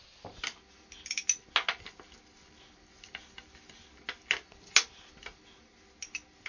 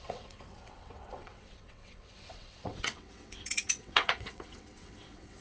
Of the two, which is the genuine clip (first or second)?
first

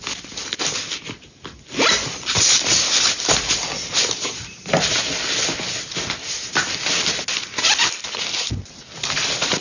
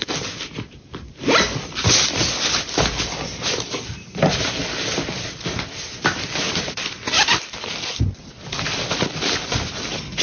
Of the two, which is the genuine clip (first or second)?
first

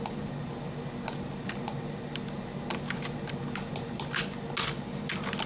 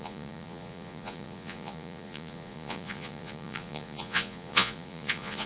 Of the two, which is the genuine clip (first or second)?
first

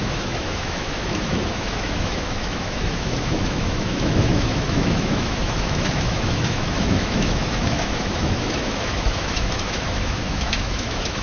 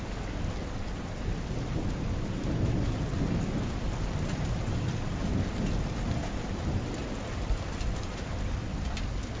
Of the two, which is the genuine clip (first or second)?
second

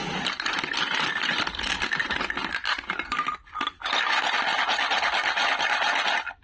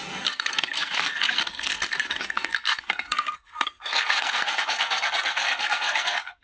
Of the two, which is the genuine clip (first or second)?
first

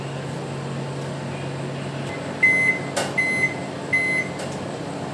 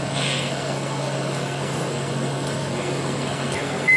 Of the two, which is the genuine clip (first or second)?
first